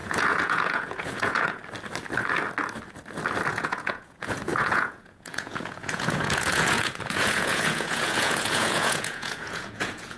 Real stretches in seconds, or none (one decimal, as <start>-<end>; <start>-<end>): 1.6-3.5